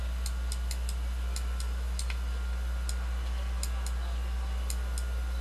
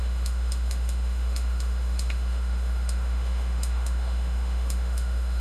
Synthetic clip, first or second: second